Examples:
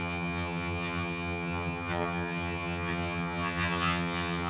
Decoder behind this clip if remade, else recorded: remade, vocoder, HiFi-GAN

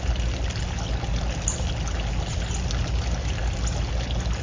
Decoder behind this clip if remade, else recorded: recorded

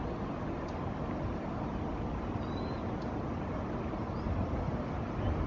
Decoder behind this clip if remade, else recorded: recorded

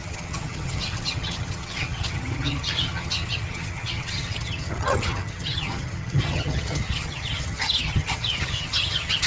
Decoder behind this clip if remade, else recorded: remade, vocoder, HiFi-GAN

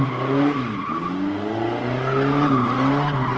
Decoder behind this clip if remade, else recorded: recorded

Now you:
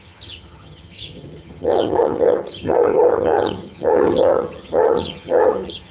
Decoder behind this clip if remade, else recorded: remade, vocoder, HiFi-GAN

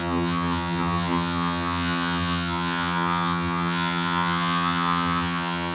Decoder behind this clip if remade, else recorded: remade, vocoder, HiFi-GAN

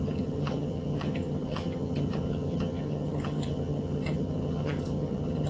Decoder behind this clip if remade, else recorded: remade, vocoder, HiFi-GAN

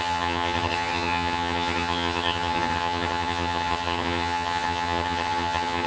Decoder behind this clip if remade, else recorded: remade, vocoder, HiFi-GAN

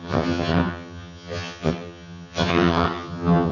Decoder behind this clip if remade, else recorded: remade, vocoder, HiFi-GAN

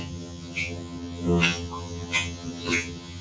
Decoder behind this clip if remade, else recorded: remade, vocoder, HiFi-GAN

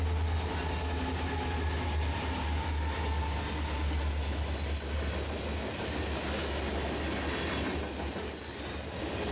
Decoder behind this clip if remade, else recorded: recorded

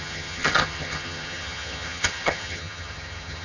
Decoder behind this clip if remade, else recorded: remade, vocoder, HiFi-GAN